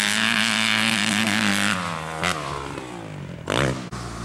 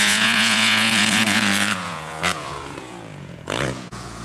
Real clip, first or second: first